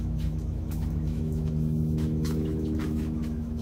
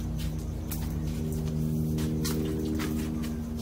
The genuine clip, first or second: second